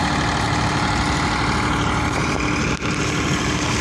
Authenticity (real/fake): real